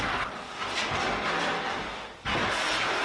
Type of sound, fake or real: real